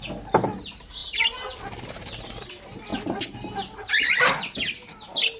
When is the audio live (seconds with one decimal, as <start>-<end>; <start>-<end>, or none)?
0.0-5.4